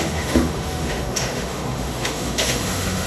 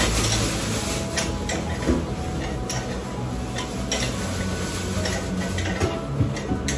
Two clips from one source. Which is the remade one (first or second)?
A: first